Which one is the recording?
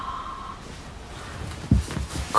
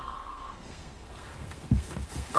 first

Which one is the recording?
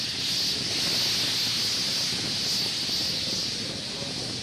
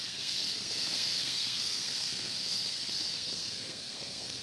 first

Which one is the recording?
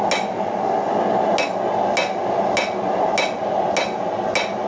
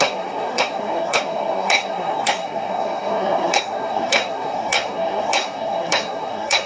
first